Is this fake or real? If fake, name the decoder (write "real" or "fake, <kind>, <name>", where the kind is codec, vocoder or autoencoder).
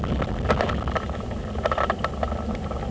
real